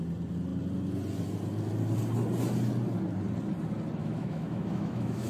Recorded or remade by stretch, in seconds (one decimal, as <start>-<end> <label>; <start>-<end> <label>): 0.0-4.0 recorded; 4.0-5.3 remade